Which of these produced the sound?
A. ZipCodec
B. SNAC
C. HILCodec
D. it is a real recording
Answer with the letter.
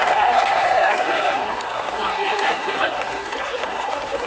B